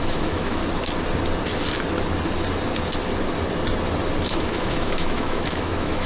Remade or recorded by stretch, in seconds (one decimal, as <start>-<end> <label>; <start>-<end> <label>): 0.0-0.6 remade; 0.6-4.3 recorded; 4.3-6.1 remade